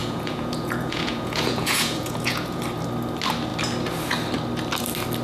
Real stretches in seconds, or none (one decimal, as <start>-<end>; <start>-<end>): 2.6-5.2